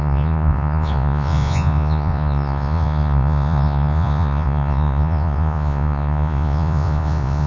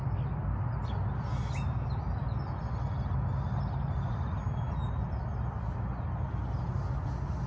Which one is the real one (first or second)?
second